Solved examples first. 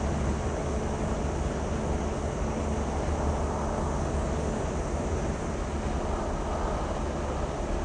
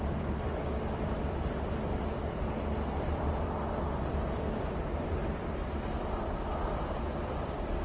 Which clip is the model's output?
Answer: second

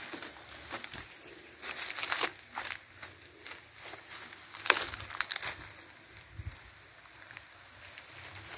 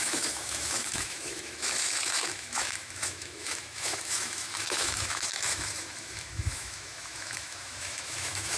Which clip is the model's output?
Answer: second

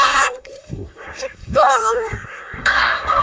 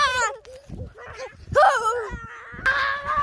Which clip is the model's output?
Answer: first